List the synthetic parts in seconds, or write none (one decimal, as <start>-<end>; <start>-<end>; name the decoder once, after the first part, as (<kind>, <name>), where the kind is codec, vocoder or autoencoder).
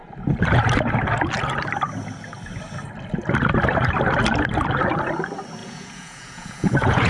5.6-7.1 (vocoder, Vocos)